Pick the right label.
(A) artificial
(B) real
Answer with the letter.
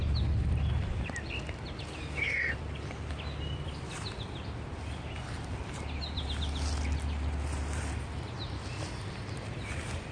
B